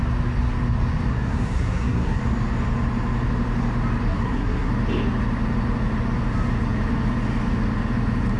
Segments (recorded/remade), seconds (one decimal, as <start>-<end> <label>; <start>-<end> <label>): 0.0-1.1 recorded; 1.1-2.2 remade; 2.2-4.1 recorded; 4.1-4.7 remade; 4.7-8.4 recorded